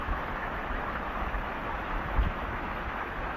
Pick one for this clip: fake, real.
fake